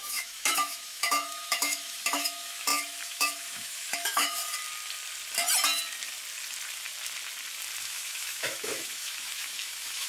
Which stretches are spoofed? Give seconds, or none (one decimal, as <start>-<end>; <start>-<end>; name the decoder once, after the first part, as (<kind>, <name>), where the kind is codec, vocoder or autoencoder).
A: 0.0-4.4 (autoencoder, DAC-VAE); 7.8-10.1